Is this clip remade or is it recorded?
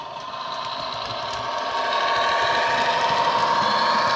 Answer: recorded